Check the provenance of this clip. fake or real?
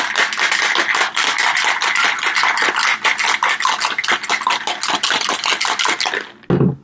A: real